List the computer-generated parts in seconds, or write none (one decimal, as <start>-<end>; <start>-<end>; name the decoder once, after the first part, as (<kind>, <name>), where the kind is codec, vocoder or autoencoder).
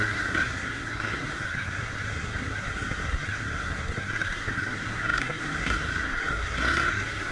0.0-7.3 (codec, SNAC)